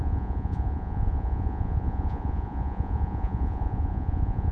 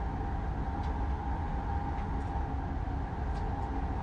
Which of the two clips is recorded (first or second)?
second